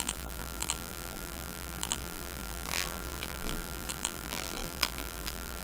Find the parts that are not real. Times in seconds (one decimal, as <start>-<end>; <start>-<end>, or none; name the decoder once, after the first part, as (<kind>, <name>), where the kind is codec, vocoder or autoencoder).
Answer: 0.0-5.6 (vocoder, BigVGAN v2)